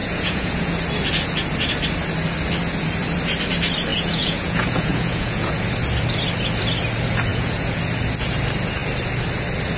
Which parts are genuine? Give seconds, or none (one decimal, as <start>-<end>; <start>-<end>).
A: 0.7-3.9; 5.6-7.3; 7.8-9.8